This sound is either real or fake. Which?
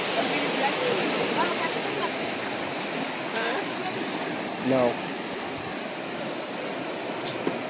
real